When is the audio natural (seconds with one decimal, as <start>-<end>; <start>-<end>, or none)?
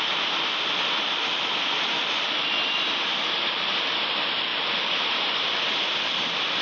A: 0.0-6.6